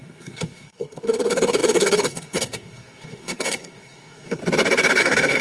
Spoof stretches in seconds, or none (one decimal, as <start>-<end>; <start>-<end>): 0.0-4.4; 5.0-5.4

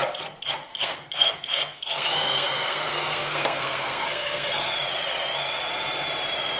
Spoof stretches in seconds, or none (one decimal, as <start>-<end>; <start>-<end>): 0.7-4.7

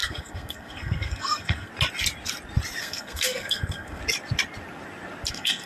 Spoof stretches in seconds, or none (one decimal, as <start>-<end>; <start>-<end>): 0.0-1.7; 2.8-4.0; 5.3-5.7

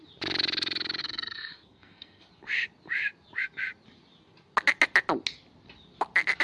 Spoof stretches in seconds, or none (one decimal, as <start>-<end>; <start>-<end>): 1.0-2.3

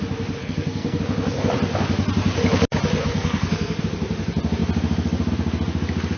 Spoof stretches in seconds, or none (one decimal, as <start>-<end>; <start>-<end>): 0.4-1.0; 3.0-3.8

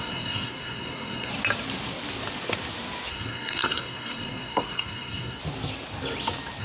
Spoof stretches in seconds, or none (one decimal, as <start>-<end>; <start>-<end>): 0.0-1.3; 3.1-5.4